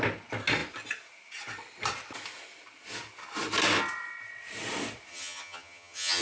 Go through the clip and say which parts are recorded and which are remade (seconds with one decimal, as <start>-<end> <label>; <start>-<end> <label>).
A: 0.0-5.1 recorded; 5.1-6.2 remade